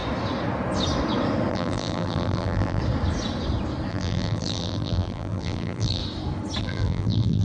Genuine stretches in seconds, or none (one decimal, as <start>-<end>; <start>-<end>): 0.0-1.5; 2.8-3.9; 6.0-6.6